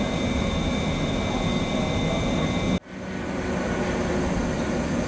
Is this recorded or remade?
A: recorded